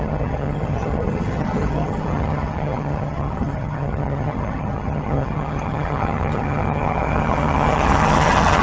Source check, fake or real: fake